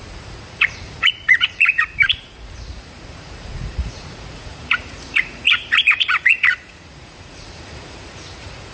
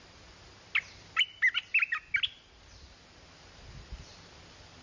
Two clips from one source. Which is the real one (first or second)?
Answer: second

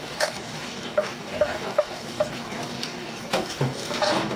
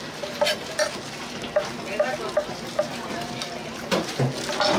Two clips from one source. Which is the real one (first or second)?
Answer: second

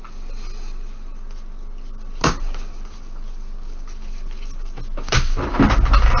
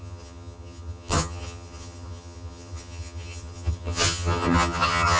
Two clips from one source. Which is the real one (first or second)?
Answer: first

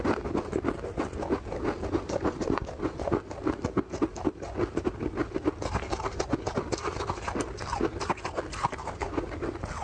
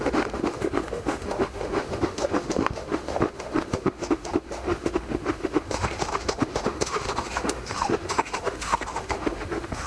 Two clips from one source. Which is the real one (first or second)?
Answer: first